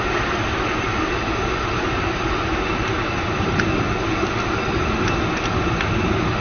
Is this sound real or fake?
real